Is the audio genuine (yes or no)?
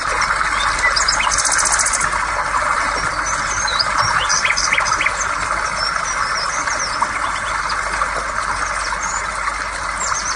yes